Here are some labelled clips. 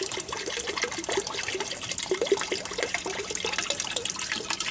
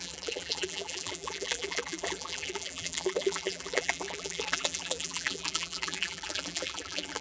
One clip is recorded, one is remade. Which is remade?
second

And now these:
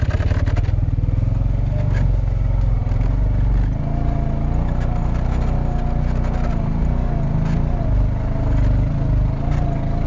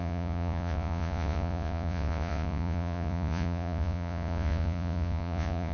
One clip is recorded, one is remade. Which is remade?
second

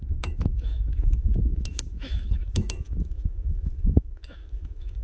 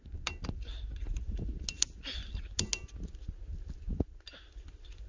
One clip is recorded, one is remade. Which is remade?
first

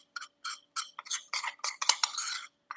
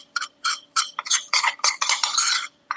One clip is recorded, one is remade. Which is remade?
second